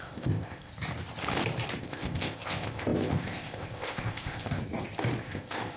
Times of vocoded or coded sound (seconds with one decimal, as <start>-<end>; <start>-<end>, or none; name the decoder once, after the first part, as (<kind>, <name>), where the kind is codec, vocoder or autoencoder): 0.0-0.7 (codec, ZipCodec); 1.8-4.6; 5.2-5.8